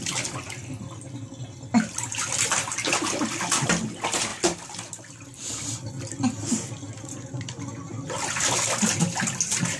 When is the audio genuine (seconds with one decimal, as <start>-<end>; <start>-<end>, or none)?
0.0-9.8